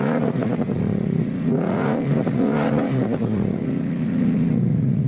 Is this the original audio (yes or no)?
no